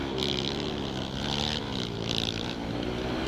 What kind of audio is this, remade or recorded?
recorded